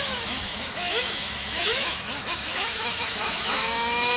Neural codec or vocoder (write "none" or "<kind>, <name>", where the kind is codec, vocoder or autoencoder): autoencoder, DAC-VAE